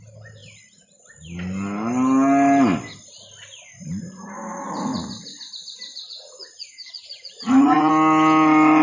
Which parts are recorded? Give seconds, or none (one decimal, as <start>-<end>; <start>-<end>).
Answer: 0.0-5.9; 7.9-8.8